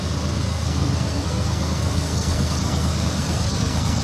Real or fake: fake